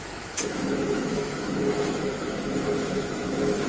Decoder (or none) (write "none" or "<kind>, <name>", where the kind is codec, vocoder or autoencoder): autoencoder, DAC-VAE